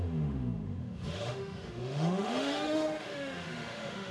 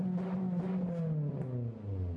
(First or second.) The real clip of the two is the second